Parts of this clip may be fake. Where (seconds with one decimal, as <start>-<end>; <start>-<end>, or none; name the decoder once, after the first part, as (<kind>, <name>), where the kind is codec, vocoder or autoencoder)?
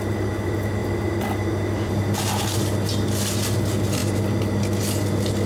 none